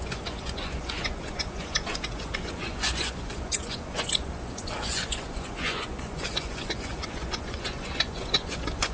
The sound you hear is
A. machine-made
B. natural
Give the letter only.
A